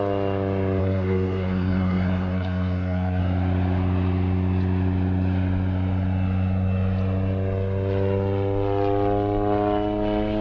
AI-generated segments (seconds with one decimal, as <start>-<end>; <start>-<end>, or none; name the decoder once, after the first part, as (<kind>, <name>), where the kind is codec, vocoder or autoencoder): 0.8-3.2 (codec, SNAC)